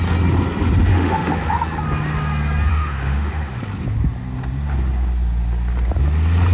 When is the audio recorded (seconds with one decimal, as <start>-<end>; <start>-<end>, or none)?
0.0-0.9; 1.4-2.7; 3.6-6.5